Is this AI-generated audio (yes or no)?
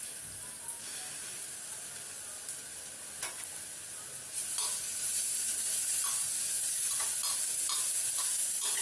no